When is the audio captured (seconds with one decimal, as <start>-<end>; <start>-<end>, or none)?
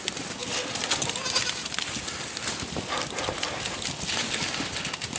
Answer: 0.0-5.2